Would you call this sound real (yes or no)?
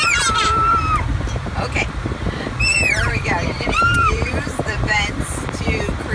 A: no